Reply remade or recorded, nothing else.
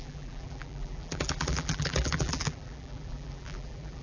remade